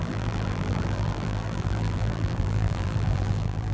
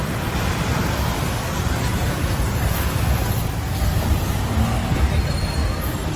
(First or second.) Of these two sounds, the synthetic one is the first